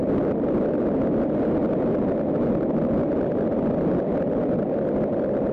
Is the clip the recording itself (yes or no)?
yes